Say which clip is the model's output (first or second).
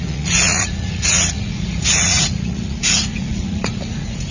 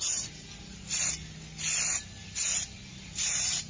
first